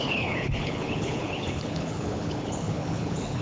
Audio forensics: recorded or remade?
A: remade